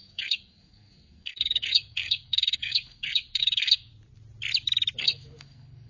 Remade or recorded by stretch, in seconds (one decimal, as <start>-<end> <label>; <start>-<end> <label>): 0.0-3.9 remade; 3.9-5.0 recorded; 5.0-5.9 remade